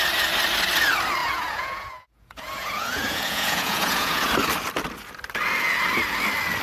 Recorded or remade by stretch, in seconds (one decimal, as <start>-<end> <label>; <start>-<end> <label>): 0.0-1.2 recorded; 1.2-4.3 remade; 4.3-6.6 recorded